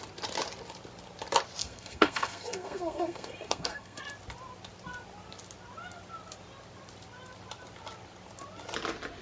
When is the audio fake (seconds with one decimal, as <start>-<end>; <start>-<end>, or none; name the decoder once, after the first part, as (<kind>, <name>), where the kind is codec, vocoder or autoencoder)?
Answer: 1.6-4.0 (codec, SNAC)